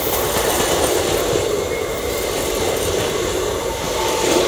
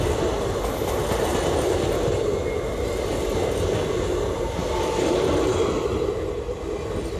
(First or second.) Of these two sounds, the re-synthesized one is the first